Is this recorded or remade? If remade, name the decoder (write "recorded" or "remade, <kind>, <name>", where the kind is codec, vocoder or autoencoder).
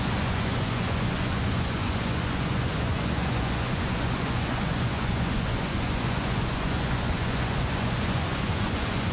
remade, vocoder, Vocos